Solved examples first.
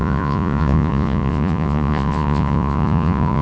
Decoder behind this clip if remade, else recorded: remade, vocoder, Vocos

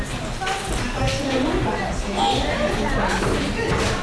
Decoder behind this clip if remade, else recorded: recorded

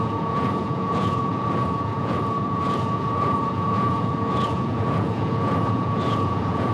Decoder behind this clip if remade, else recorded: remade, vocoder, Vocos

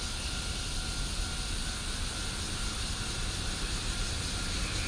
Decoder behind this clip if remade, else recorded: recorded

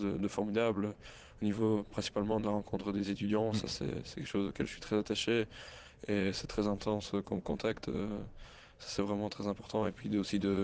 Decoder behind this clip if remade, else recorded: remade, vocoder, Vocos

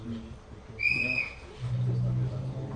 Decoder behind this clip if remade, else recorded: recorded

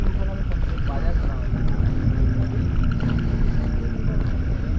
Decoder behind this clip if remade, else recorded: recorded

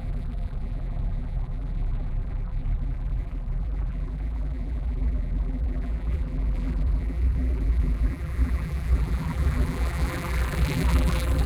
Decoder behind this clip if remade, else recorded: remade, vocoder, BigVGAN v2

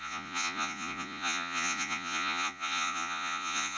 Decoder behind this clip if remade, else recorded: remade, vocoder, Vocos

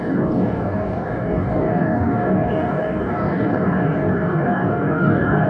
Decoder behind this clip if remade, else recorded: remade, codec, DAC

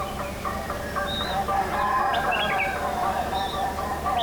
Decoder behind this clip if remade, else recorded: recorded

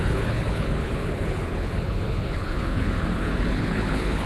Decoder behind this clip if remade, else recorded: remade, codec, HILCodec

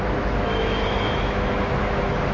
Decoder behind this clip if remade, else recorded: remade, autoencoder, DAC-VAE